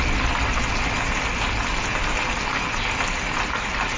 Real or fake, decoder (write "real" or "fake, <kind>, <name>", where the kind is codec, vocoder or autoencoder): real